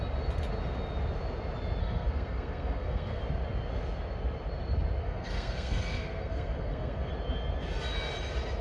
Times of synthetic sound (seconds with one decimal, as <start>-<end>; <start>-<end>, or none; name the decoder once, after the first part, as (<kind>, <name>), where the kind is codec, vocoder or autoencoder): 1.8-3.2 (codec, SNAC); 5.0-7.1